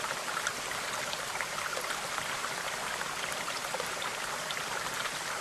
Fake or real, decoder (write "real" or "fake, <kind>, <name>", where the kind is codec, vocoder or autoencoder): real